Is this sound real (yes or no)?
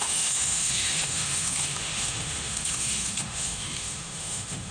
no